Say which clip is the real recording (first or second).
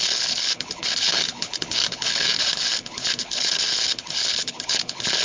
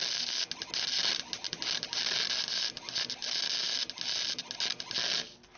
second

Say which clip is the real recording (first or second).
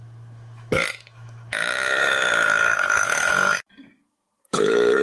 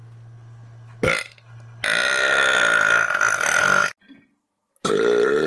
second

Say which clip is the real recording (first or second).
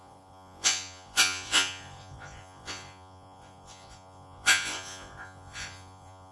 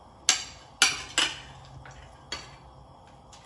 second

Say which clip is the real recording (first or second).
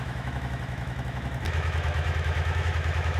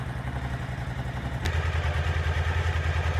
second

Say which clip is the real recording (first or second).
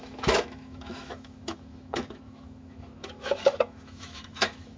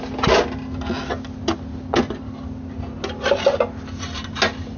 second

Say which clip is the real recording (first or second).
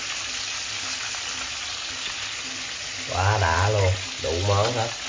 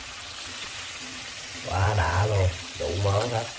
first